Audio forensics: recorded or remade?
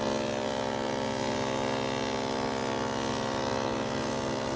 recorded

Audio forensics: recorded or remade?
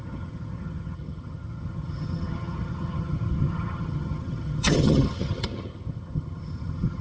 remade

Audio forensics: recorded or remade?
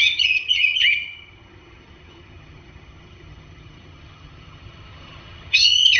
remade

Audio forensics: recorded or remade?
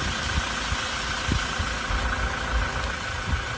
recorded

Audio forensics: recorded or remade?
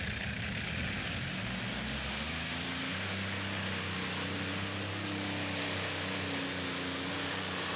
recorded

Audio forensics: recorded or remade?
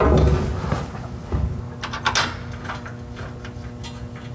recorded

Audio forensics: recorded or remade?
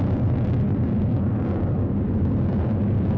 recorded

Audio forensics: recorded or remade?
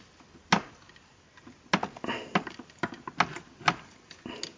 recorded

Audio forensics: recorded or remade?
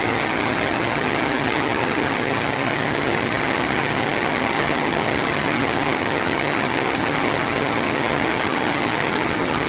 remade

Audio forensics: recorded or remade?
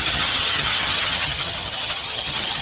remade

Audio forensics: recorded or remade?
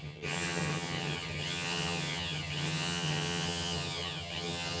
remade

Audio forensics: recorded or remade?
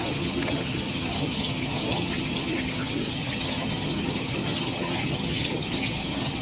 remade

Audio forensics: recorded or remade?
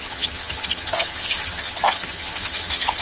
remade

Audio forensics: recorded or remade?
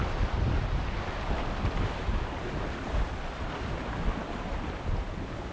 recorded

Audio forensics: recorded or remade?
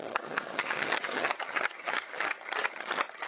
remade